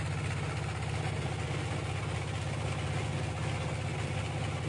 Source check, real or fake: real